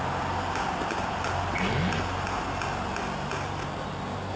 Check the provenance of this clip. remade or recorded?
recorded